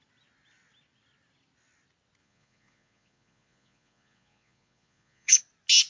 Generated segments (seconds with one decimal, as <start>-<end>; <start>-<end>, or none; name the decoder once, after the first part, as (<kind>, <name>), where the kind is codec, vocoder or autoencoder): 2.2-5.4 (vocoder, Vocos)